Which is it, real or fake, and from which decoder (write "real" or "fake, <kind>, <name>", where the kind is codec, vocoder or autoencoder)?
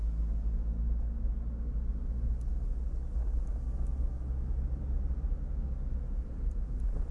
real